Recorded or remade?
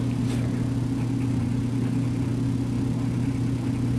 recorded